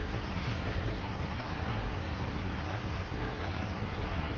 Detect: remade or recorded remade